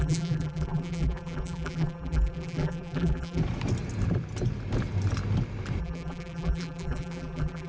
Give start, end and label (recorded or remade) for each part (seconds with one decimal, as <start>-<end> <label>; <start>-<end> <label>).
0.0-3.4 remade; 3.4-5.8 recorded; 5.8-7.7 remade

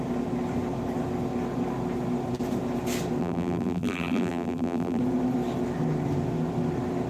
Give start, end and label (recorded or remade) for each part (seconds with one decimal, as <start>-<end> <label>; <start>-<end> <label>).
0.0-3.2 recorded; 3.2-5.0 remade; 5.0-7.1 recorded

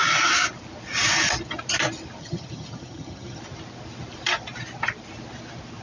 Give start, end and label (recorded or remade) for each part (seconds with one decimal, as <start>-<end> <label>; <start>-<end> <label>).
0.0-2.2 recorded; 2.2-3.4 remade; 3.4-5.8 recorded

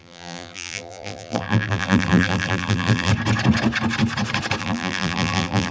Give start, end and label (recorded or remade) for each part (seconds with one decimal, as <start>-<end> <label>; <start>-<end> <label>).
0.0-3.1 remade; 3.1-4.6 recorded; 4.6-5.7 remade

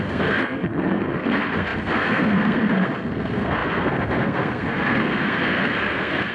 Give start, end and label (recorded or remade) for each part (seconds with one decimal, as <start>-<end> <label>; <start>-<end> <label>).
0.0-6.3 remade